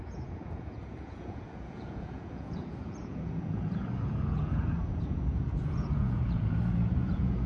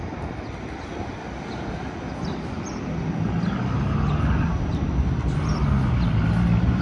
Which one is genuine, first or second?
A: second